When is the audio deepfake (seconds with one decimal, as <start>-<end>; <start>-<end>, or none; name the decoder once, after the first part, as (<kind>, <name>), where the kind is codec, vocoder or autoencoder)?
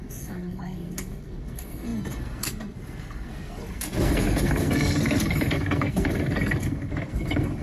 0.0-7.6 (codec, SNAC)